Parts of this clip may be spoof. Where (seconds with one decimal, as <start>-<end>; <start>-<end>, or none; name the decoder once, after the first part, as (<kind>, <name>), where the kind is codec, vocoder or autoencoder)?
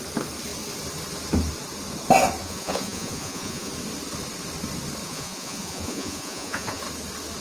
2.4-3.7 (vocoder, Vocos); 5.0-6.8